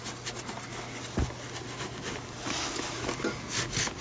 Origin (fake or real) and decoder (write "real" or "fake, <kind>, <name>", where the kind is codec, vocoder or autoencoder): real